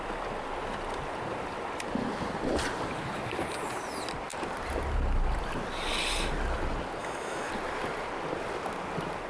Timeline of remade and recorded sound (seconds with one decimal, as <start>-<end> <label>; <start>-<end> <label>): 0.0-7.0 recorded; 7.0-7.5 remade; 7.5-9.3 recorded